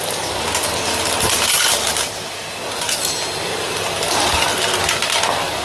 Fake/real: real